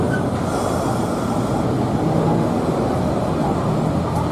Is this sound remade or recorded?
recorded